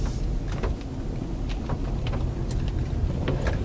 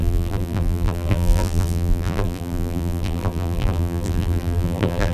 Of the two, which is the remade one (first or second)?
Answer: second